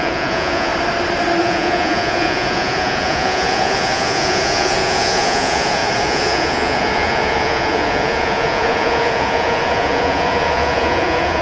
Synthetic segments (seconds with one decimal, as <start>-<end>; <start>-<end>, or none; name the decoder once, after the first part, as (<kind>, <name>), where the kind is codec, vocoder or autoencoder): 0.0-0.7 (vocoder, Vocos); 1.4-11.4